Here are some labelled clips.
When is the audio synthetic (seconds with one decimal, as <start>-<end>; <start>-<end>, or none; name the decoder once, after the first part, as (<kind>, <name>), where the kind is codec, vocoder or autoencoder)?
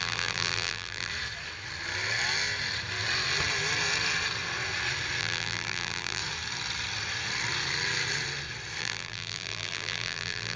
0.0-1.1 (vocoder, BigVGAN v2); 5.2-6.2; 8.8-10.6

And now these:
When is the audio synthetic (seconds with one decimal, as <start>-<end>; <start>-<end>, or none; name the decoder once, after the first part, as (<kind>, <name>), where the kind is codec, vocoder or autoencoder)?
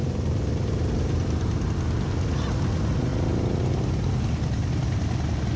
0.0-1.7 (vocoder, BigVGAN v2)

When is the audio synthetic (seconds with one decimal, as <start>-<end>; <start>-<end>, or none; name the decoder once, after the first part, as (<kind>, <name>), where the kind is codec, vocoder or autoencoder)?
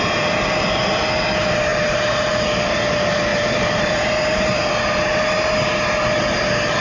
1.7-2.3 (vocoder, BigVGAN v2); 3.3-4.7